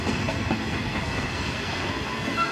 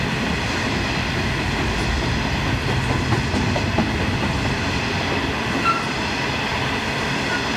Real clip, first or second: second